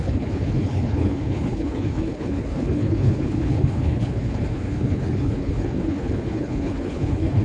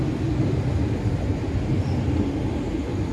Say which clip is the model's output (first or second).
first